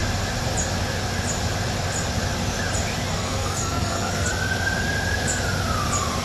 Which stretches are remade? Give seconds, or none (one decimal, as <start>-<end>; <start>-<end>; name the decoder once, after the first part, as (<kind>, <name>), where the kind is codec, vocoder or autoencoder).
3.1-4.3 (codec, SNAC)

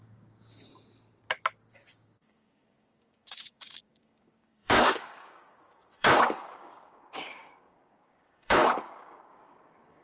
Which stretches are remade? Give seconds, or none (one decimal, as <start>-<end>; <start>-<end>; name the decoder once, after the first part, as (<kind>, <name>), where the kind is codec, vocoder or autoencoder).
0.0-0.7 (codec, DAC); 1.7-10.0

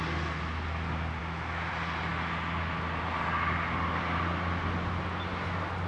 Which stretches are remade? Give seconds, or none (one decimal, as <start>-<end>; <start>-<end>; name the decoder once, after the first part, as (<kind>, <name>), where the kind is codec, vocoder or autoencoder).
1.2-1.7 (autoencoder, DAC-VAE)

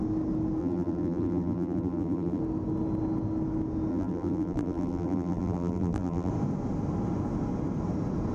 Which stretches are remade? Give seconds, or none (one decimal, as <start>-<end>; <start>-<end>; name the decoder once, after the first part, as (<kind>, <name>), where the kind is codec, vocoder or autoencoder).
0.6-2.4 (vocoder, BigVGAN v2); 3.9-6.3

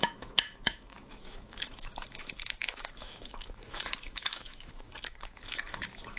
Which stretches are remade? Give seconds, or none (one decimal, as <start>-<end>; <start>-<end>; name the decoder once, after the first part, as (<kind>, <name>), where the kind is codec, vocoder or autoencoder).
0.0-6.2 (autoencoder, DAC-VAE)